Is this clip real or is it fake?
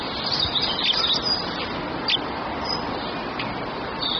real